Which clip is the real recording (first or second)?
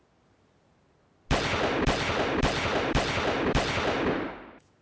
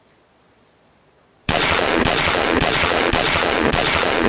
first